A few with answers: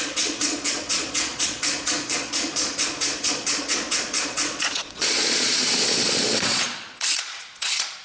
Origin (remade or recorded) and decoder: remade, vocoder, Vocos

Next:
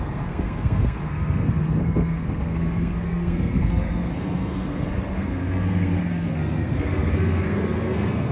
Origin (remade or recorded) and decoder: remade, codec, SNAC